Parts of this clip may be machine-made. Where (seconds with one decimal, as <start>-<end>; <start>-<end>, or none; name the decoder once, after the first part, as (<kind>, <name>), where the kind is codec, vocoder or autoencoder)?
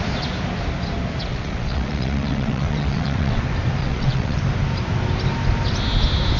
1.3-3.4 (vocoder, WaveNeXt); 3.8-4.4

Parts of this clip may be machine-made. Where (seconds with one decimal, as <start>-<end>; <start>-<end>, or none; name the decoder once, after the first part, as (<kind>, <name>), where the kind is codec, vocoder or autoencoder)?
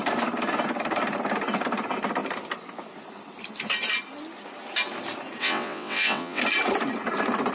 5.4-6.4 (vocoder, WaveNeXt)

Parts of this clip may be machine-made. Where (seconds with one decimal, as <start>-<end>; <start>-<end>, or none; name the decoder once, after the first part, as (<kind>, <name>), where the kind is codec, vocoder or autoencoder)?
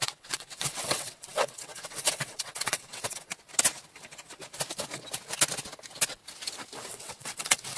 0.0-3.3 (vocoder, WaveNeXt); 6.9-7.8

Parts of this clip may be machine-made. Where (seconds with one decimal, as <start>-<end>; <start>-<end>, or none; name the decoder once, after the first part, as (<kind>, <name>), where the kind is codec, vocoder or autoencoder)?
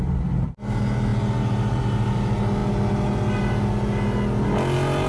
none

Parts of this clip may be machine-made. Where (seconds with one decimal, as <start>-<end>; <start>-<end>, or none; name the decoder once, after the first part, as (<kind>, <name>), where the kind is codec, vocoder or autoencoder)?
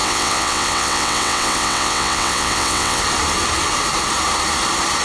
0.0-3.0 (vocoder, WaveNeXt)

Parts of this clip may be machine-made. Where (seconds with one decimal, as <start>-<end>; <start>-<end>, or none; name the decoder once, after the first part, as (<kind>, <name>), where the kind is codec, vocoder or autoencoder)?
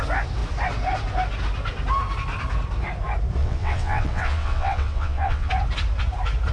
3.4-5.5 (vocoder, WaveNeXt)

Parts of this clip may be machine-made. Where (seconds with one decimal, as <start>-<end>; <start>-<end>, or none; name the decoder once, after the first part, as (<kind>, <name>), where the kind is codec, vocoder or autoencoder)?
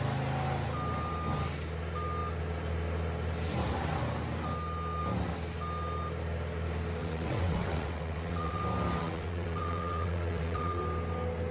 7.0-8.6 (vocoder, WaveNeXt); 9.0-10.8